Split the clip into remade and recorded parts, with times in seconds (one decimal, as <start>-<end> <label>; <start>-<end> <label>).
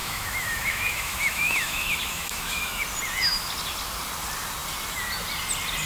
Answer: 0.0-2.8 remade; 2.8-5.9 recorded